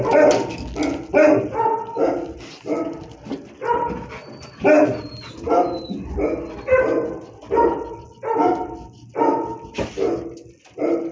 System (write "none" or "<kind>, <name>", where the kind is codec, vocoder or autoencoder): none